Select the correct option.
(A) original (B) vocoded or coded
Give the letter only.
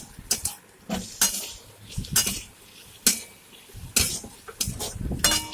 A